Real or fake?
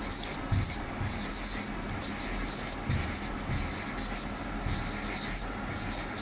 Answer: real